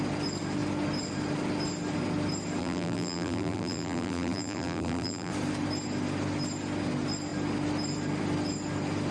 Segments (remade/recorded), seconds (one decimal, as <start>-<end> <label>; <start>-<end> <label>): 0.0-2.6 recorded; 2.6-5.3 remade; 5.3-9.1 recorded